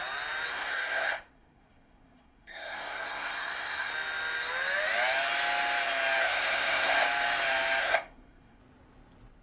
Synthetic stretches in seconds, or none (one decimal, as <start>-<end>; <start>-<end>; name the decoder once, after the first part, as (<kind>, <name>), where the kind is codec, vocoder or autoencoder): 0.5-3.9 (codec, SNAC); 6.2-6.9; 7.8-8.6